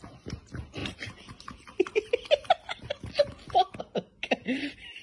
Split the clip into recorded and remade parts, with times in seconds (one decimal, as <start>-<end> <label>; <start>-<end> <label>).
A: 0.0-5.0 recorded